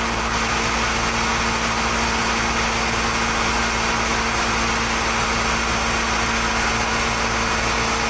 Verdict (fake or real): real